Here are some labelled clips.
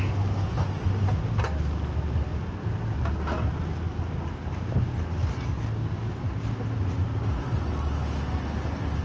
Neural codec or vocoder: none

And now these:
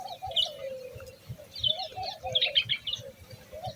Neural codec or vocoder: none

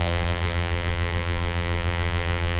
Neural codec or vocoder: vocoder, BigVGAN v2